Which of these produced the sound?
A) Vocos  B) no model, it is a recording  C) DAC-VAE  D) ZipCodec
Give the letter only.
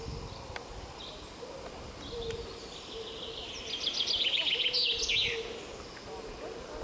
B